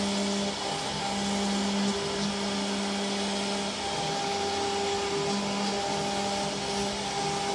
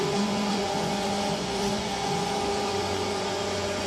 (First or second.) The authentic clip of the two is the first